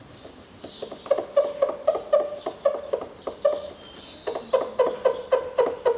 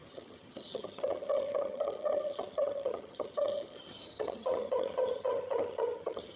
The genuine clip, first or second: first